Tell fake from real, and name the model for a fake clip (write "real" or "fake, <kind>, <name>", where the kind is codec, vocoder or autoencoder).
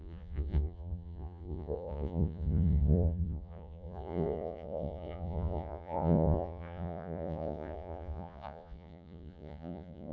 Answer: fake, vocoder, Vocos